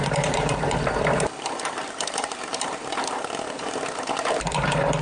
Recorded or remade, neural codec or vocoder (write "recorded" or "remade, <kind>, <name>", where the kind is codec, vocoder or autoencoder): remade, vocoder, BigVGAN v2